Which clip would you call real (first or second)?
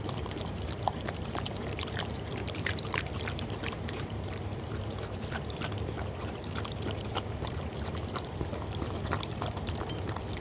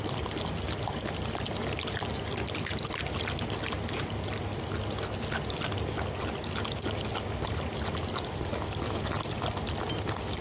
second